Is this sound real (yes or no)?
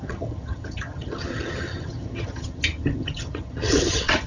no